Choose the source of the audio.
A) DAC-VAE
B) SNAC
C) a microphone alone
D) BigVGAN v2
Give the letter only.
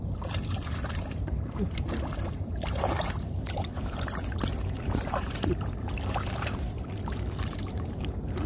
D